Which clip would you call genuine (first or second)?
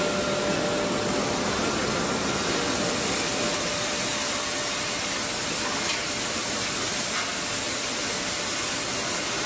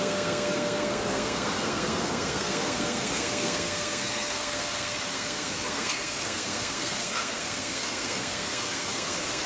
first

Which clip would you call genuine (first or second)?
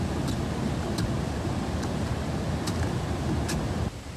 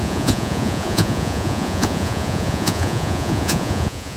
first